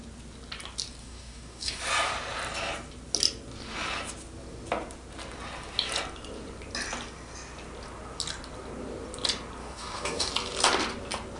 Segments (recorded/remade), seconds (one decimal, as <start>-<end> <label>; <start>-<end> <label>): 0.0-1.0 recorded; 1.0-1.8 remade; 1.8-9.6 recorded; 9.6-10.3 remade; 10.3-11.4 recorded